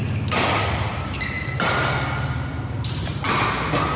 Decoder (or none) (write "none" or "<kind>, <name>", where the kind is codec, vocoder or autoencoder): none